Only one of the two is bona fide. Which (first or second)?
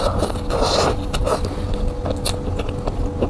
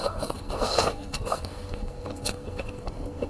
first